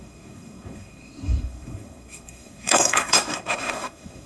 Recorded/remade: remade